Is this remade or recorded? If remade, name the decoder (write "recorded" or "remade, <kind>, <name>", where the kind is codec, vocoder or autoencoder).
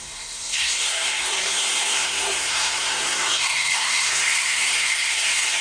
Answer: remade, codec, SNAC